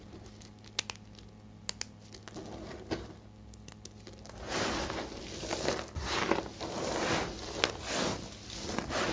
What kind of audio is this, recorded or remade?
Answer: recorded